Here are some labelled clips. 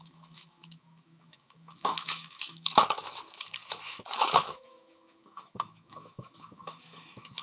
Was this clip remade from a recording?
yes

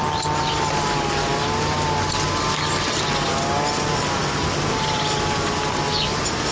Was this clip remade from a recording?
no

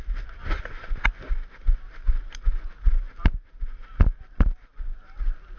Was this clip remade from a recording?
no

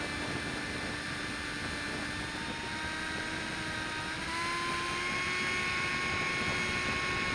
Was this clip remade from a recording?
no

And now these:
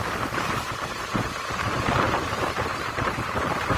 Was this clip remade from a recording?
yes